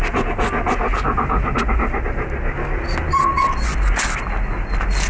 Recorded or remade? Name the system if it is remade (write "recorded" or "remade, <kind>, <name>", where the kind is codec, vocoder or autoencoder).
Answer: recorded